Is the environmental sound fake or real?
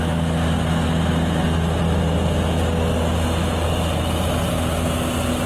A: real